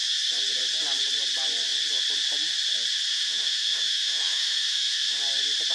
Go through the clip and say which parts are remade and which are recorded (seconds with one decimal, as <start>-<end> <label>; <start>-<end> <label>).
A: 0.0-3.1 recorded; 3.1-5.2 remade; 5.2-5.7 recorded